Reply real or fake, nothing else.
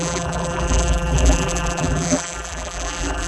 fake